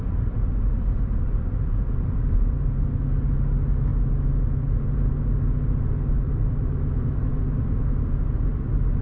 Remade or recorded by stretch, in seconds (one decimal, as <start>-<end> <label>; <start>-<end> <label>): 0.0-9.0 recorded